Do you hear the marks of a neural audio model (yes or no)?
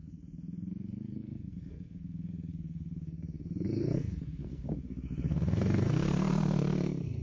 yes